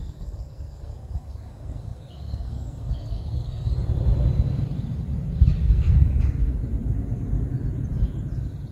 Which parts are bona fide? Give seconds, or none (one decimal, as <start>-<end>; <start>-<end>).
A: 3.7-5.6; 6.6-8.7